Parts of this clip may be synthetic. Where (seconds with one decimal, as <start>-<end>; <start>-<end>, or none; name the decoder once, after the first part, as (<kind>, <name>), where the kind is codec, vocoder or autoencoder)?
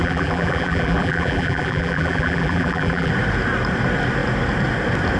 0.0-3.1 (vocoder, BigVGAN v2)